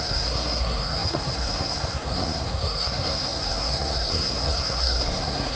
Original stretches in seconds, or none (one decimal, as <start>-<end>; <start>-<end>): none